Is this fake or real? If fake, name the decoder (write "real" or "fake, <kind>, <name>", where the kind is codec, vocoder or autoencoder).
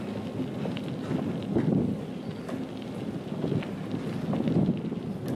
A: real